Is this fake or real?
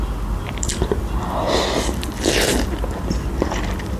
real